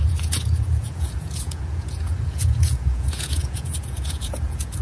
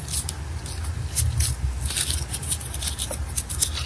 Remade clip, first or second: first